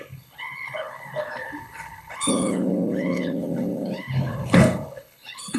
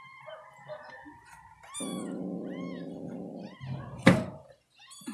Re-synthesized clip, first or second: first